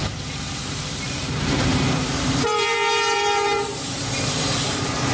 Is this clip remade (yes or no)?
yes